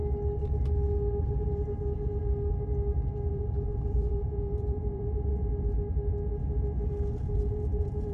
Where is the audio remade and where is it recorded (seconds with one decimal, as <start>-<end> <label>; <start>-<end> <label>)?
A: 0.0-3.3 recorded; 3.3-5.3 remade; 5.3-7.2 recorded; 7.2-8.1 remade